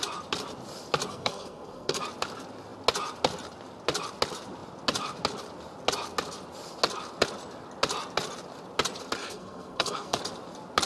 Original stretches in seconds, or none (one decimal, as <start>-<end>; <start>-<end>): 0.0-1.1; 2.0-9.2; 10.2-10.9